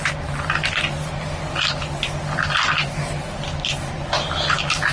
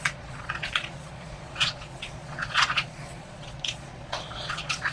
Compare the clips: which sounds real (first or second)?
first